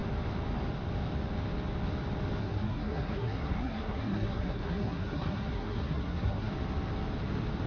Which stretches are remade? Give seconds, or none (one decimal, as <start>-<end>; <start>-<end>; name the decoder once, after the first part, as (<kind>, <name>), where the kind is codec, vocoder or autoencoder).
2.4-6.5 (codec, SNAC)